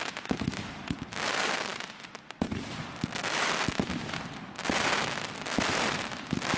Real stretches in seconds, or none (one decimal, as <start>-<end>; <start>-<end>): 0.0-6.6